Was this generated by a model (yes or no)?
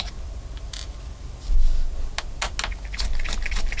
no